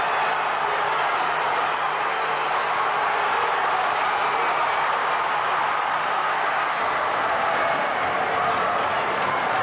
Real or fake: real